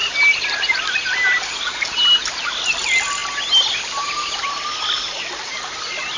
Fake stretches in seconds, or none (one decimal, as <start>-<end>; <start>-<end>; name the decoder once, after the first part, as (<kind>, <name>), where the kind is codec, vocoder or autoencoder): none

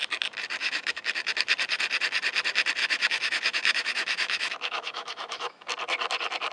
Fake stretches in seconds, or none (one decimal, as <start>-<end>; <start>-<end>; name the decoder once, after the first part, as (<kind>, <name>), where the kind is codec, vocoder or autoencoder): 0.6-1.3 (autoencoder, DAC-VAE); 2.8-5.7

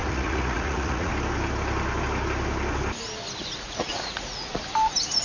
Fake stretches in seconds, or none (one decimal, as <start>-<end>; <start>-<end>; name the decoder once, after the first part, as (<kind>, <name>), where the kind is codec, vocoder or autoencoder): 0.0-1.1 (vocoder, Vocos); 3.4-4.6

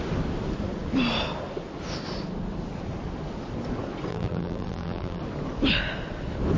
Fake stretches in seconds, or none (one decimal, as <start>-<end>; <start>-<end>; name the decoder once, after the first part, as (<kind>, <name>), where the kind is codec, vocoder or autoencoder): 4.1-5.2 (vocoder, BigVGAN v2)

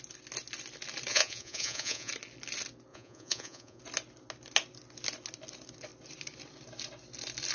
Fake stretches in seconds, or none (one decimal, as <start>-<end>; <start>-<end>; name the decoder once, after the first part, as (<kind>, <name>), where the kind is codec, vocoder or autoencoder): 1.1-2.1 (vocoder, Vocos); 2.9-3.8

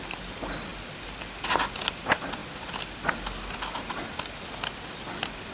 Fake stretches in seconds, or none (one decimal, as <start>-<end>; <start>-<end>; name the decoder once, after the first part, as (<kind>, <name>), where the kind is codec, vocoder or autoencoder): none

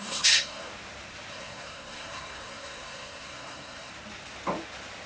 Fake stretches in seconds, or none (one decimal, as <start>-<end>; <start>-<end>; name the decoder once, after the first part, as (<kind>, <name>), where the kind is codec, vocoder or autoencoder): 0.0-0.7 (codec, SNAC); 1.3-3.9

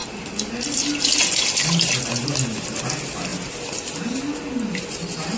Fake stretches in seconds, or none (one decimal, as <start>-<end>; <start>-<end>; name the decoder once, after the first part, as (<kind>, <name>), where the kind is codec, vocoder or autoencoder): none